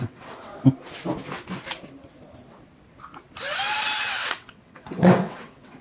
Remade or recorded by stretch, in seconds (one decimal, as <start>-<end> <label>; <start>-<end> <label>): 0.0-0.5 remade; 0.5-4.0 recorded; 4.0-5.8 remade